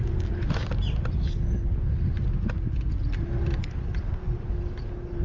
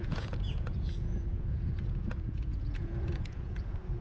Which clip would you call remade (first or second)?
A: second